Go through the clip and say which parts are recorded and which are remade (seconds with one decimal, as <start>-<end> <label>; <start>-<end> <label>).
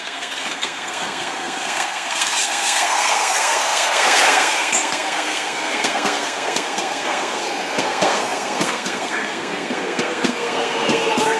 0.0-11.4 remade